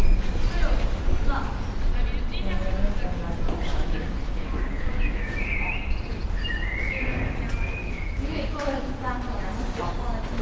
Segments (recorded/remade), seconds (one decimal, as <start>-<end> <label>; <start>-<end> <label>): 0.0-3.7 recorded; 3.7-5.3 remade; 5.3-7.8 recorded; 7.8-8.9 remade; 8.9-10.4 recorded